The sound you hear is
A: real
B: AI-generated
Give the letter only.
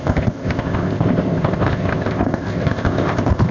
B